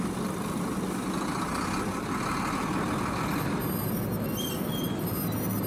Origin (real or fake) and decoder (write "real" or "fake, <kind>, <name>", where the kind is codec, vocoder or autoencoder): real